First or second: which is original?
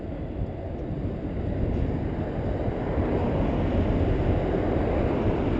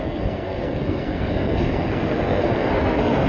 first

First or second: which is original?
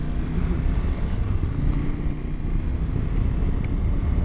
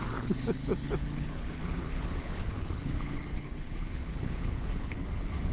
first